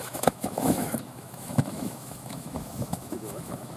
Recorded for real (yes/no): no